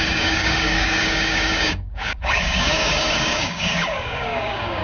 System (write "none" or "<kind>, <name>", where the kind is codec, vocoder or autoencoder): codec, DAC